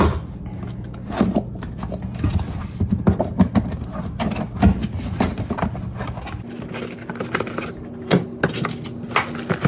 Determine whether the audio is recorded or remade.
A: recorded